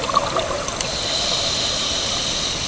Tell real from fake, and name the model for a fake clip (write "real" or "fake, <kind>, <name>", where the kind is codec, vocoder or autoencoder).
real